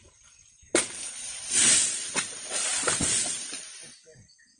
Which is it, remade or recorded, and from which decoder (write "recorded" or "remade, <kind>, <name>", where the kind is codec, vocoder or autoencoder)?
recorded